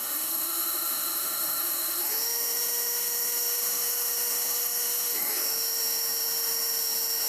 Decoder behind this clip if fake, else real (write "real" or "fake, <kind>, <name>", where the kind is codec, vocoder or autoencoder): fake, autoencoder, DAC-VAE